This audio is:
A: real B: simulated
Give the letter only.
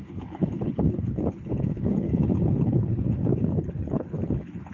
B